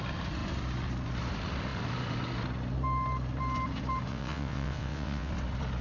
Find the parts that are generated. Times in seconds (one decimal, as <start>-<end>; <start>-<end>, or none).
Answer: 4.1-5.3